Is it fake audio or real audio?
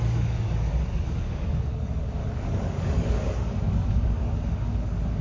fake